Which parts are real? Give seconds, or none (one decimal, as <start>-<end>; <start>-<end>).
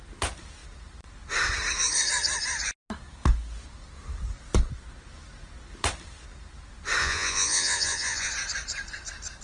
0.0-7.0; 8.3-9.4